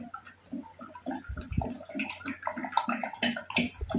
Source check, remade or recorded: recorded